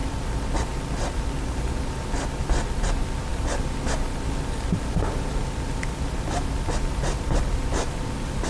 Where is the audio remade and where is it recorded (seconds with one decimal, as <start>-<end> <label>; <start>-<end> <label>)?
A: 0.0-8.5 recorded

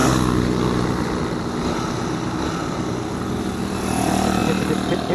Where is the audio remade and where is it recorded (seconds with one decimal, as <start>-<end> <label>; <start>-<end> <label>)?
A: 0.0-1.5 remade; 1.5-2.6 recorded; 2.6-3.1 remade; 3.1-5.1 recorded

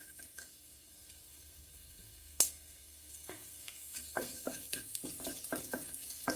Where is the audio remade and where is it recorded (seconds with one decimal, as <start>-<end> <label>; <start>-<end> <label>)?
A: 0.0-5.0 remade; 5.0-5.6 recorded; 5.6-6.4 remade

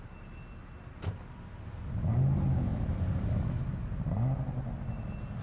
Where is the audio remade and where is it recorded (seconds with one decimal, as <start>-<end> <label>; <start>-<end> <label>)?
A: 0.0-5.4 recorded

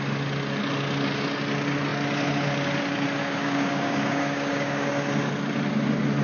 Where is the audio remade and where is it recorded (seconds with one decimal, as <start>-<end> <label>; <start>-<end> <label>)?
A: 0.0-3.2 recorded; 3.2-4.9 remade; 4.9-6.2 recorded

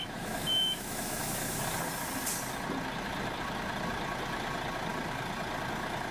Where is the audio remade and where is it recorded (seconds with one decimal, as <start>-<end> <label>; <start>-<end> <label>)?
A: 0.0-1.6 remade; 1.6-6.1 recorded

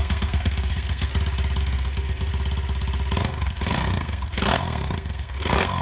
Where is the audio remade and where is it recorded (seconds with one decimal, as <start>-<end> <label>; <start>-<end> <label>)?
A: 0.0-1.1 remade; 1.1-1.6 recorded; 1.6-2.3 remade; 2.3-3.2 recorded; 3.2-5.8 remade

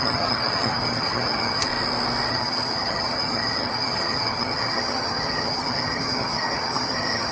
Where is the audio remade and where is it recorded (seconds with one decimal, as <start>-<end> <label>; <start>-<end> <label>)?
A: 0.0-1.7 remade; 1.7-2.3 recorded; 2.3-7.3 remade